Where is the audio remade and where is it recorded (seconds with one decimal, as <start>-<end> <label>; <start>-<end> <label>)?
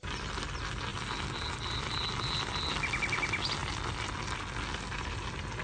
0.0-5.6 recorded